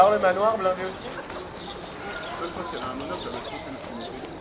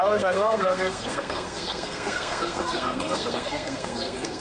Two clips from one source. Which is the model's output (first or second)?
second